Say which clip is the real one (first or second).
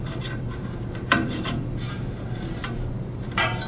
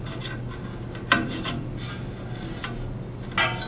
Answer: second